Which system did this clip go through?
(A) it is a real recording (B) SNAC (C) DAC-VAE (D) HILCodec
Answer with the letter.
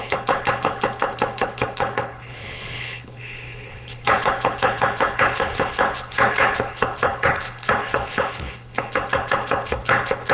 D